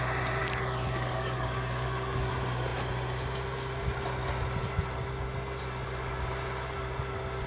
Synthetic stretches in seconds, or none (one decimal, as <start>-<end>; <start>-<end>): 0.4-2.3